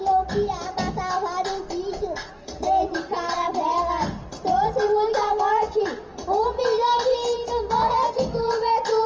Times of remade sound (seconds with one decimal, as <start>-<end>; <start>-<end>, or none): none

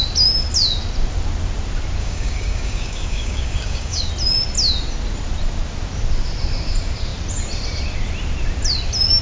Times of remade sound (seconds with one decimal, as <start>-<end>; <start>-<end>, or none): 2.0-4.1

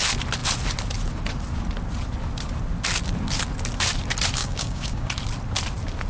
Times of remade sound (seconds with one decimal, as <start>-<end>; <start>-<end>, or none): 4.4-5.1